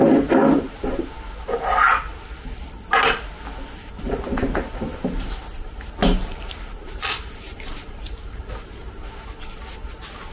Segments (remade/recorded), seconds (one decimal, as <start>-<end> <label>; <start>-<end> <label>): 0.0-6.0 recorded; 6.0-8.9 remade; 8.9-10.3 recorded